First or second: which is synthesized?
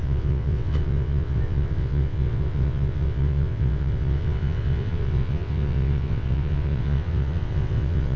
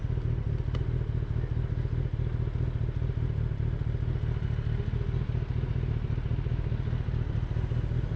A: first